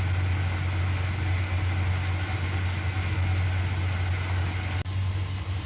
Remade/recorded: recorded